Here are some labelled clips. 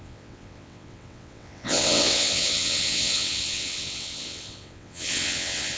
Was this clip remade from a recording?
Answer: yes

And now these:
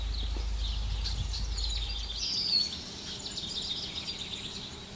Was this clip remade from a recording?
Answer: no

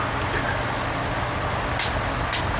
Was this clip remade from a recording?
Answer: no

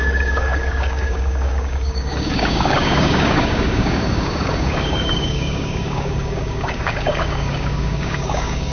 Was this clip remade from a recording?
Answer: yes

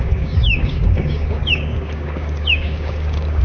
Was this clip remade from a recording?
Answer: yes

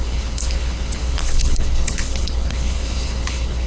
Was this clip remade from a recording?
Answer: yes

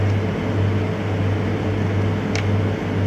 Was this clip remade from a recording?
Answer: no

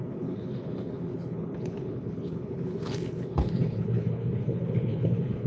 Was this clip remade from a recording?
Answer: yes